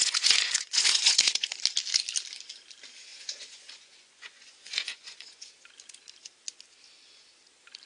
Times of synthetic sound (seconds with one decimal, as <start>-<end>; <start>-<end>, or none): 0.0-1.5; 3.1-5.5